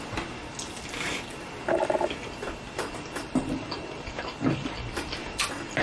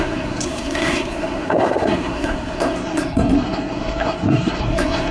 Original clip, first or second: first